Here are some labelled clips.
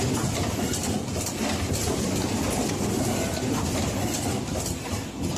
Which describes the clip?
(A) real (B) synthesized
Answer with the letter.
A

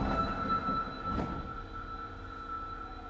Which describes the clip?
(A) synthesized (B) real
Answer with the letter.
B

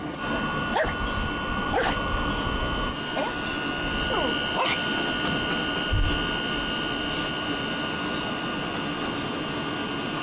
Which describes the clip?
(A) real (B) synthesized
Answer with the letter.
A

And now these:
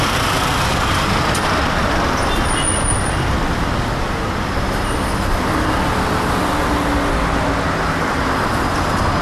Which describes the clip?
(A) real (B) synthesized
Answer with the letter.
A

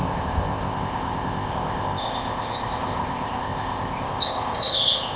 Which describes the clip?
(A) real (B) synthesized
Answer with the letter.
B